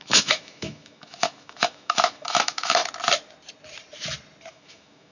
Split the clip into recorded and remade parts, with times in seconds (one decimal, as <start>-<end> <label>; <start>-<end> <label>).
0.0-2.8 remade; 2.8-4.5 recorded; 4.5-5.1 remade